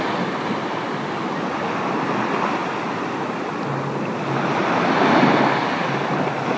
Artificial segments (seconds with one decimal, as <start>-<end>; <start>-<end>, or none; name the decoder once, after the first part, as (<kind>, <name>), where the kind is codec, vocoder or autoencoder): none